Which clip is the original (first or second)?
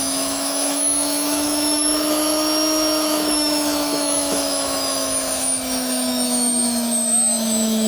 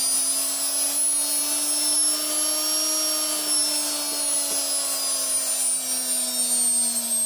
second